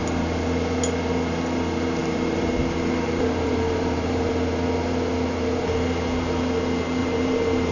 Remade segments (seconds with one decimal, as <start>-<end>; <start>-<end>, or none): 2.0-4.3; 7.0-7.7